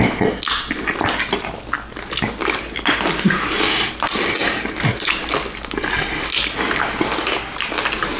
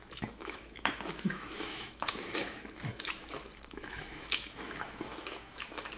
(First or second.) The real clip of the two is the first